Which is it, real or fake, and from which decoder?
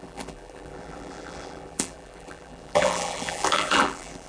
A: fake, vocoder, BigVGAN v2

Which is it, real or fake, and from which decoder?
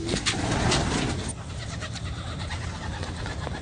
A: real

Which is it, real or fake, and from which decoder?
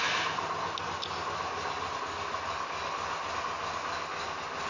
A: real